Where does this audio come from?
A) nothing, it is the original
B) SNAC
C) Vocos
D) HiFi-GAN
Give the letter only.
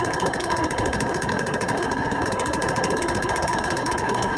B